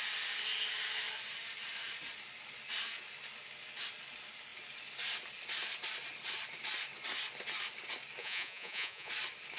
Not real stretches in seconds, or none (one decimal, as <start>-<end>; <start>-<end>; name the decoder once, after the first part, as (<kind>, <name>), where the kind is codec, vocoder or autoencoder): 8.2-9.1 (vocoder, Vocos)